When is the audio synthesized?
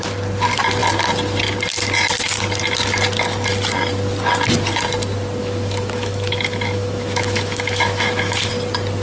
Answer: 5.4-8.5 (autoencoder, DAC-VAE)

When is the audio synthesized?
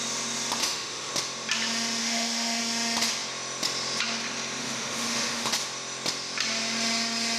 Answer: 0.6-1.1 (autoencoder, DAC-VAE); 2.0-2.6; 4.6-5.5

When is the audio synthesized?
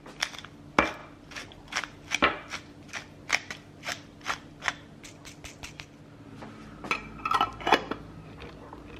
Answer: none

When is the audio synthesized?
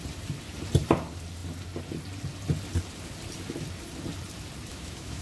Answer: 4.7-5.2 (autoencoder, DAC-VAE)